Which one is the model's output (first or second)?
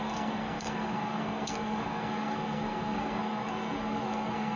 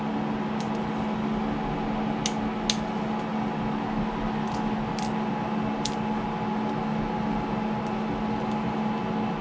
first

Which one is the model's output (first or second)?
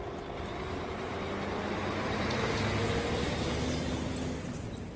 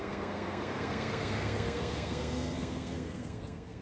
second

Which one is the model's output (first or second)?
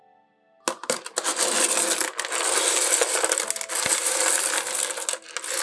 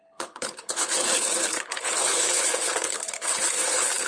second